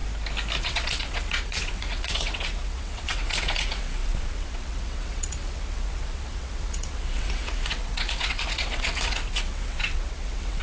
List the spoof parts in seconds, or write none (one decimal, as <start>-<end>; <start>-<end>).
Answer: 0.6-10.6